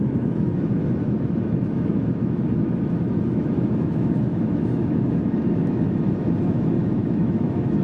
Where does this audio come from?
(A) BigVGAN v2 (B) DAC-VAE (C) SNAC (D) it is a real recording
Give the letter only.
B